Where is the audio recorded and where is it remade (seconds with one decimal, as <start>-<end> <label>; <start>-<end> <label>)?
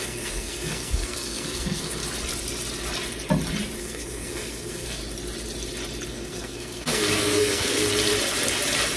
0.0-2.0 remade; 2.0-3.8 recorded; 3.8-5.0 remade; 5.0-6.1 recorded; 6.1-7.8 remade; 7.8-9.0 recorded